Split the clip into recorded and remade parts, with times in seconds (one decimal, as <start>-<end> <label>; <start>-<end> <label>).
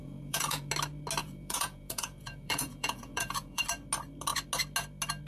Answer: 0.0-0.7 remade; 0.7-1.2 recorded; 1.2-3.6 remade; 3.6-5.3 recorded